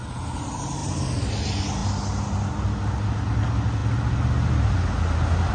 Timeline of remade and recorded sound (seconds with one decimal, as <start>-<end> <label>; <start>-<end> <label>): 0.0-5.5 recorded